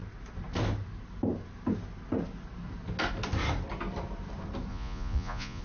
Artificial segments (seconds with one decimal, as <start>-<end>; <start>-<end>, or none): 4.7-5.6